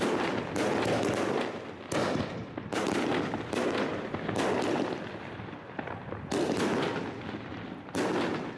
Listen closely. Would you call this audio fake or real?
real